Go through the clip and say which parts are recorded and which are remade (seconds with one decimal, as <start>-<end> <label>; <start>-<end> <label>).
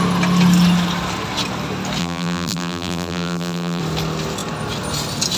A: 0.0-2.0 recorded; 2.0-3.8 remade; 3.8-5.4 recorded